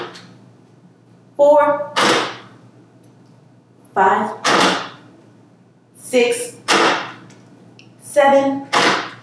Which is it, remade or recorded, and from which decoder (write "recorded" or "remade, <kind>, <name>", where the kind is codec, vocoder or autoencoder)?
recorded